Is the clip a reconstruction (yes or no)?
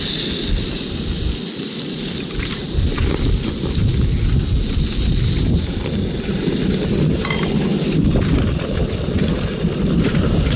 no